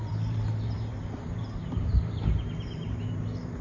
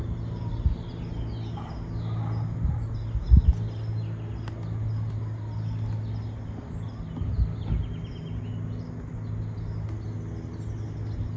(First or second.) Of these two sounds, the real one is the second